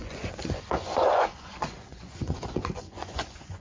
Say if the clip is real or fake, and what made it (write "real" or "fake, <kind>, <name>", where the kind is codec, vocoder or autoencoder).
fake, vocoder, Vocos